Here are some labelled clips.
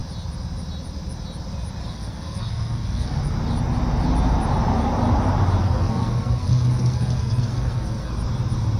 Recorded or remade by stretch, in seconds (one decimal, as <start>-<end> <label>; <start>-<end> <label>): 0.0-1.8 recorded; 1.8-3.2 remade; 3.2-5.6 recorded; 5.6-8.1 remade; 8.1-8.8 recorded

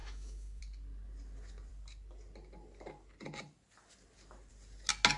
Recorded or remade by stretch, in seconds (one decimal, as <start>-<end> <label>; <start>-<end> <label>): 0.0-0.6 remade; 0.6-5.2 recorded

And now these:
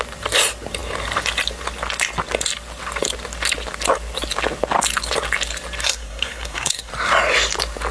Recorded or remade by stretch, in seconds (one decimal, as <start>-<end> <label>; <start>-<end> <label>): 0.0-5.8 recorded; 5.8-6.9 remade; 6.9-7.9 recorded

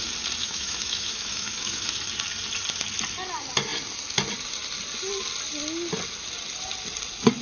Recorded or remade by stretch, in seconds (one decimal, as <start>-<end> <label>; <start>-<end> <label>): 0.0-0.4 recorded; 0.4-2.0 remade; 2.0-7.4 recorded